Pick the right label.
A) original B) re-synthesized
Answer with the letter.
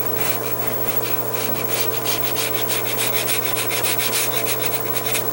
B